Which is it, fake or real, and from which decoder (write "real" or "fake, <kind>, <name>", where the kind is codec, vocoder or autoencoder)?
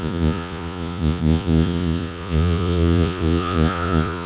fake, vocoder, Vocos